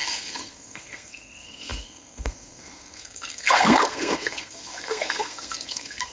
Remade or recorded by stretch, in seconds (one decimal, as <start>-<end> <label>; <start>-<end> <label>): 0.0-6.1 remade